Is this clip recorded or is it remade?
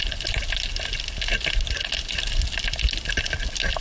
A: recorded